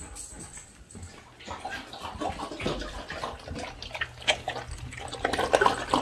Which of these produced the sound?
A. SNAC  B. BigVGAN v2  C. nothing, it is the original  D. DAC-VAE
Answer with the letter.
C